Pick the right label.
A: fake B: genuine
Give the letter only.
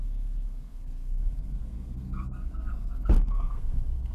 A